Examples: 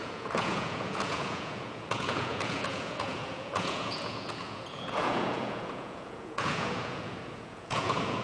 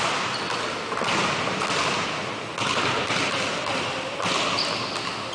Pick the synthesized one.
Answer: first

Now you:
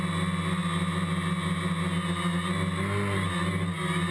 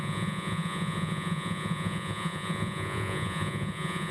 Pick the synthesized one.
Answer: second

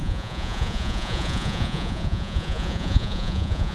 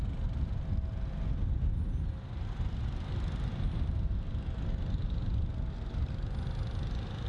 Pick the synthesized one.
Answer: first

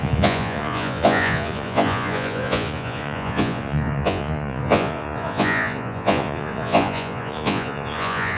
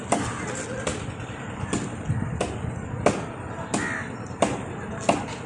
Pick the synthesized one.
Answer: first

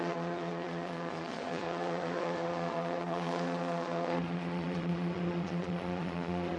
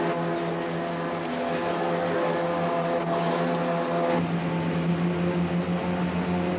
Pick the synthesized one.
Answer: first